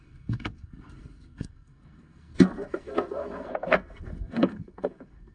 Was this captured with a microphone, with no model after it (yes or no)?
no